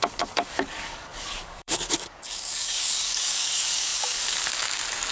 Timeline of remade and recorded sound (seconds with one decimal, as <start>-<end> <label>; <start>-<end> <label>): 0.0-5.1 remade